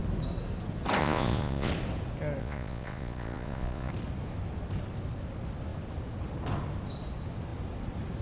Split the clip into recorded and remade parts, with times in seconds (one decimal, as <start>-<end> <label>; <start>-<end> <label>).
0.0-1.0 recorded; 1.0-1.7 remade; 1.7-2.4 recorded; 2.4-3.9 remade; 3.9-8.2 recorded